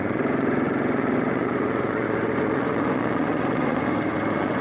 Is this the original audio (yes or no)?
no